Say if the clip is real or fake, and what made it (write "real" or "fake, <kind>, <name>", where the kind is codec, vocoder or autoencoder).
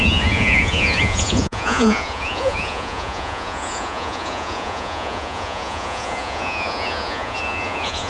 fake, vocoder, Vocos